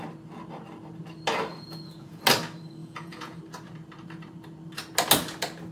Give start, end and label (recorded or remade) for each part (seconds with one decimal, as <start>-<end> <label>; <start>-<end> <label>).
0.0-1.5 recorded; 1.5-2.2 remade; 2.2-2.8 recorded; 2.8-3.4 remade; 3.4-5.7 recorded